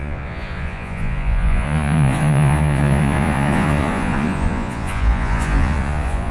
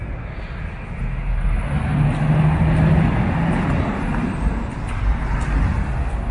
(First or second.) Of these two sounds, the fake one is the first